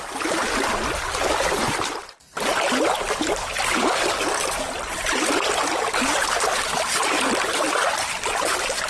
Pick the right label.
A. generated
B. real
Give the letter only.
B